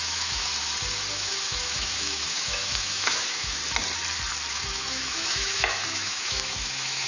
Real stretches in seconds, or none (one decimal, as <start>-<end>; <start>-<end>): 0.5-1.1; 3.6-4.5